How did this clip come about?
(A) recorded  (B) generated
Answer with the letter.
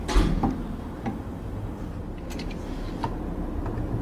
A